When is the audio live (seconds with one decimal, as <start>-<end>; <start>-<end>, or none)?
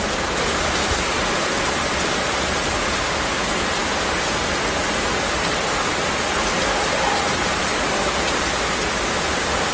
0.0-9.7